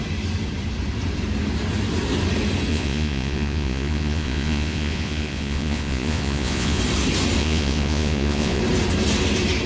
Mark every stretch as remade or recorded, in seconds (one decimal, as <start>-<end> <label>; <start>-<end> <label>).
0.0-2.7 recorded; 2.7-6.8 remade; 6.8-7.4 recorded; 7.4-8.6 remade; 8.6-9.7 recorded